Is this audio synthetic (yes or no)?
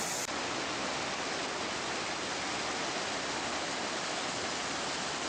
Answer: no